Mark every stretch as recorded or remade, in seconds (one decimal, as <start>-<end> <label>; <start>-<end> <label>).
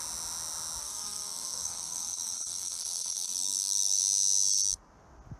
0.0-0.8 recorded; 0.8-4.0 remade; 4.0-5.4 recorded